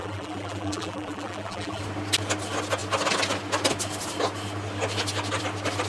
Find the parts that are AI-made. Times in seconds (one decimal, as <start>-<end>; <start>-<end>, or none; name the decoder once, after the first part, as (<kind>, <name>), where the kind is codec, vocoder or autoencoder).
0.0-1.8 (vocoder, BigVGAN v2)